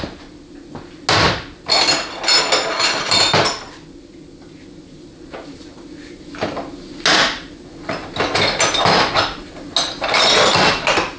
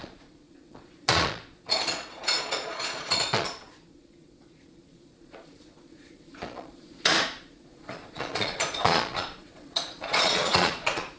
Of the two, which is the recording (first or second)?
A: first